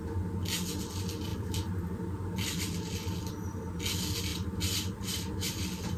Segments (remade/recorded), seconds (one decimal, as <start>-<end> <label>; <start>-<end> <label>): 0.0-1.3 recorded; 1.3-3.3 remade; 3.3-4.3 recorded; 4.3-5.6 remade; 5.6-6.0 recorded